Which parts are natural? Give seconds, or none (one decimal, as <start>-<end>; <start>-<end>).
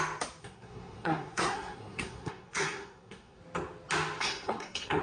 0.0-0.4; 3.4-4.2